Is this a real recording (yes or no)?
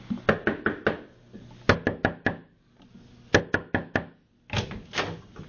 yes